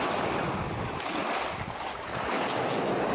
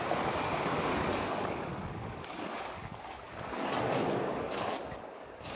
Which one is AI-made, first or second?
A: second